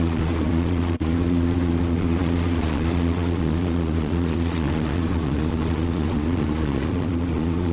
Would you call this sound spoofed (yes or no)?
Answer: yes